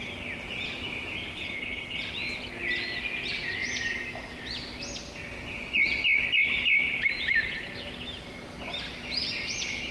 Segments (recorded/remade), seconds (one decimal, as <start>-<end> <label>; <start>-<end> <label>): 0.0-1.3 recorded; 1.3-2.0 remade; 2.0-9.9 recorded